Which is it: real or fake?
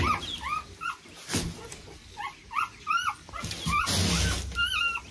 real